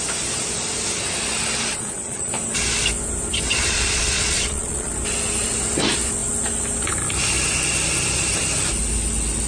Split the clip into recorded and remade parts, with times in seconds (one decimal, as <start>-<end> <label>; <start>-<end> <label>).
0.0-1.7 recorded; 1.7-2.3 remade; 2.3-3.6 recorded; 3.6-4.9 remade; 4.9-9.5 recorded